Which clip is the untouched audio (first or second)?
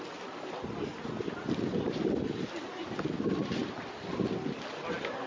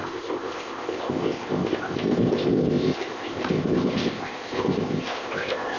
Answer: first